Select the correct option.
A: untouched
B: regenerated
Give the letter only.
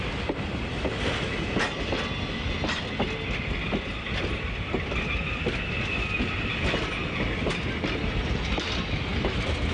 A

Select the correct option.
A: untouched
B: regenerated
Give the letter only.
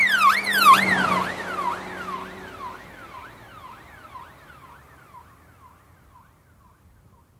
A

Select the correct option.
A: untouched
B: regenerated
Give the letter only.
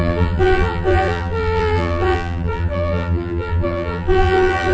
B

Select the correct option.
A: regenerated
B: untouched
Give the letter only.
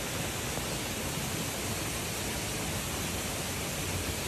B